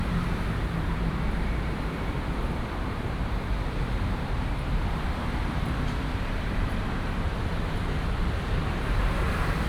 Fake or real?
fake